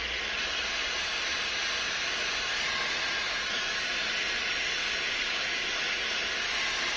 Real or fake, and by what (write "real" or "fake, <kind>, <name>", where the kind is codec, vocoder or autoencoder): real